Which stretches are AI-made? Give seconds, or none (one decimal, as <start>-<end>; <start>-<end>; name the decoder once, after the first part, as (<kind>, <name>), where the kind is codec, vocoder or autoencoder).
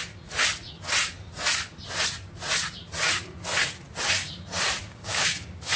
5.1-5.8 (codec, DAC)